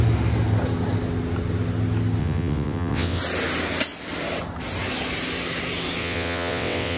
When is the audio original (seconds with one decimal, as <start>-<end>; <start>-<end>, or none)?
0.0-2.2; 3.2-6.0